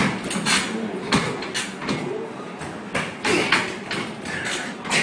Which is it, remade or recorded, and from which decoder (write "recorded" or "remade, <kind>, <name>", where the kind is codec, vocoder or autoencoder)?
recorded